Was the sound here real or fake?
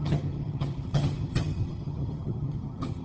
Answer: fake